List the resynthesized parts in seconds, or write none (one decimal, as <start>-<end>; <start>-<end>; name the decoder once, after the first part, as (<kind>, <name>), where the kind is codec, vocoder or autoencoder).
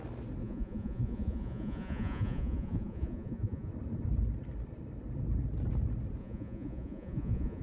0.4-3.7 (vocoder, Vocos); 6.2-7.6